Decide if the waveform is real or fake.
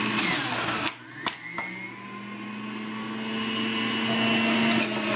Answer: real